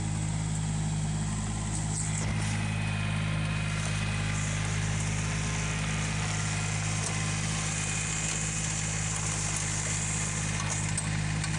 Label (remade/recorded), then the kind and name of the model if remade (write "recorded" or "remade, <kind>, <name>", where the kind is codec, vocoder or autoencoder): recorded